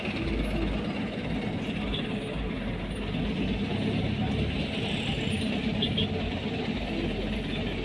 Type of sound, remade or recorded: recorded